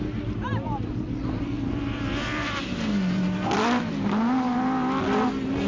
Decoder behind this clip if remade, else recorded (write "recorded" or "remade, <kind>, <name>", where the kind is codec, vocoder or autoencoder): recorded